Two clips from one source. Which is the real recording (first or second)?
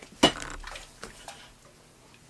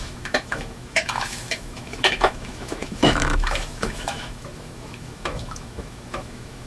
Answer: first